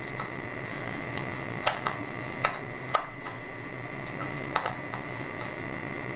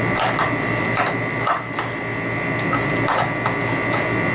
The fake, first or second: first